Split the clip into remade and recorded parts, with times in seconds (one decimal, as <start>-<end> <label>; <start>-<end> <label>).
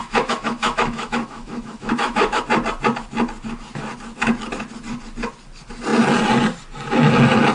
0.0-2.4 remade; 2.4-7.5 recorded